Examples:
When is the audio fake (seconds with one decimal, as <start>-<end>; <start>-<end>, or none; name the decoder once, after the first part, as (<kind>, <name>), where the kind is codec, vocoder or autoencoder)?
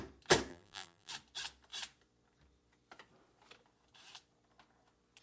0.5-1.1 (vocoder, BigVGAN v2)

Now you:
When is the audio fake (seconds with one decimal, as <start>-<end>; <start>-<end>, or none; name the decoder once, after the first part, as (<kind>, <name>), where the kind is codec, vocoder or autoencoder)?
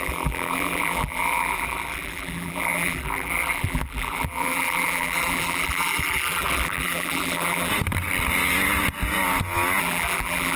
0.0-7.7 (vocoder, BigVGAN v2); 9.8-10.6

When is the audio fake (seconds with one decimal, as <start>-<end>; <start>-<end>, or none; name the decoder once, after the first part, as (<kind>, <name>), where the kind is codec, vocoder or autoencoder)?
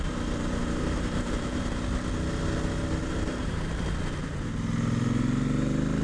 0.6-1.7 (vocoder, BigVGAN v2); 3.0-3.7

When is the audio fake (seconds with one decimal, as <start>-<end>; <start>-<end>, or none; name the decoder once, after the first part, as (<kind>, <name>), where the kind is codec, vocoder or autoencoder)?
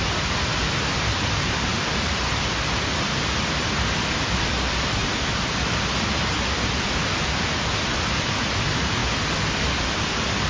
none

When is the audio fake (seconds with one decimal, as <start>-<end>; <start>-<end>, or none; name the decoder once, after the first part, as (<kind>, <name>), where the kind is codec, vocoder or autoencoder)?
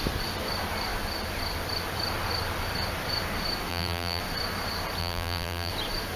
3.7-4.2 (vocoder, BigVGAN v2); 5.0-5.7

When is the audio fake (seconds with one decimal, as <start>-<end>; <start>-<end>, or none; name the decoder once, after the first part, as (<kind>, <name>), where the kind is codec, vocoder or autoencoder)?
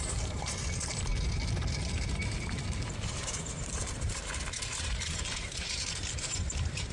0.0-1.1 (vocoder, BigVGAN v2); 2.0-4.2; 4.7-6.9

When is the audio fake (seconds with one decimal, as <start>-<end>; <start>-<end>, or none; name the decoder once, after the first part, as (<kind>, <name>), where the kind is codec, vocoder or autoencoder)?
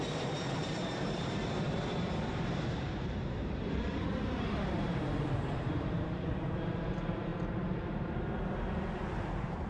0.0-7.3 (vocoder, BigVGAN v2); 9.1-9.7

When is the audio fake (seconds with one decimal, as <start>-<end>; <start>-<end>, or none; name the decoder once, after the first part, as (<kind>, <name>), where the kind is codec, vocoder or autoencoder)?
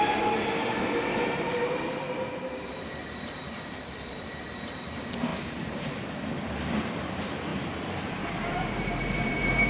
0.0-9.7 (vocoder, BigVGAN v2)